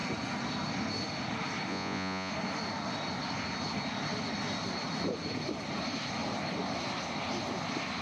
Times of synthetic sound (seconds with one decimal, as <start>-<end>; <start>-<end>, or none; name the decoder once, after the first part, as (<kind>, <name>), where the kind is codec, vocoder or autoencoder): 1.7-2.3 (vocoder, Vocos)